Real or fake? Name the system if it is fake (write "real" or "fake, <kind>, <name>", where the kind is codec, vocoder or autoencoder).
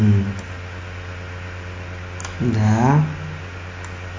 real